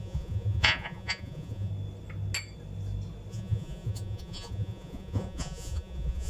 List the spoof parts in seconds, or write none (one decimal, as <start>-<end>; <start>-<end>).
0.0-1.7; 3.3-6.3